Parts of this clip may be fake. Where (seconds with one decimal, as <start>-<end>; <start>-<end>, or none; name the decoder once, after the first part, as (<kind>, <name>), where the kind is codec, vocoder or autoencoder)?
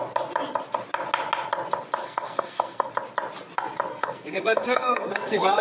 2.0-2.9 (codec, SNAC); 3.9-5.6